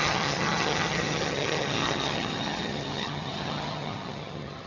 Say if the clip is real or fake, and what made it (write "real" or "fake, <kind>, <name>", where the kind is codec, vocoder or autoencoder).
fake, vocoder, HiFi-GAN